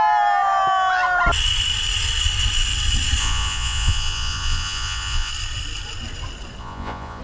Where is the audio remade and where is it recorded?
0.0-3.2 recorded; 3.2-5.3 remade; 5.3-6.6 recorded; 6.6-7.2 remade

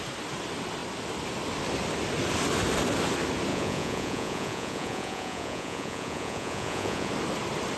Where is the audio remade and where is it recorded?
0.0-3.5 recorded; 3.5-7.1 remade; 7.1-7.8 recorded

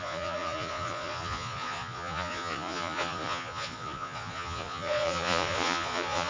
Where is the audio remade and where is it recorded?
0.0-6.3 remade